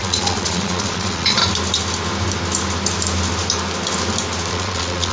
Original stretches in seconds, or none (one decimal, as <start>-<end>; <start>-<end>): 1.4-4.5